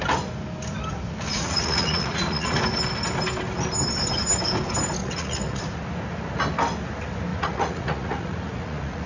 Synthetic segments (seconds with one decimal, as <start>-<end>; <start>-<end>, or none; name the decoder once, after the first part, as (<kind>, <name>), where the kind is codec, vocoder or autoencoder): 1.3-2.6 (vocoder, Vocos); 5.0-5.6; 7.3-9.1